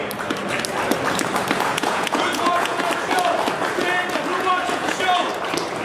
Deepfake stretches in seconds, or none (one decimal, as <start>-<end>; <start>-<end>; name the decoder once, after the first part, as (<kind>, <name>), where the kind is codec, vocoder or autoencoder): 1.7-2.8 (vocoder, Vocos); 4.3-5.3